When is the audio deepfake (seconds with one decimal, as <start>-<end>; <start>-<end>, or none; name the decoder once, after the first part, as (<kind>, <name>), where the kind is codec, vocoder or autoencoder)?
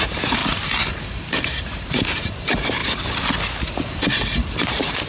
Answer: 0.0-0.4 (vocoder, BigVGAN v2); 0.9-2.8; 4.6-5.1